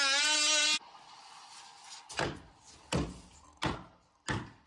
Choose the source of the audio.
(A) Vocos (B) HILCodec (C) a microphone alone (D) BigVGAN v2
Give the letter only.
C